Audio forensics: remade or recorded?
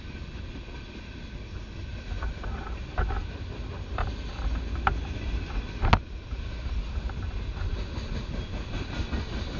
recorded